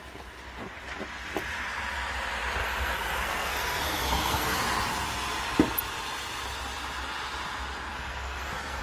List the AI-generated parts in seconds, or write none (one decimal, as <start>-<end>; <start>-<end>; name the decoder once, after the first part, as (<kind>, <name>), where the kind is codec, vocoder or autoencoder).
2.6-4.6 (codec, SNAC); 7.9-8.8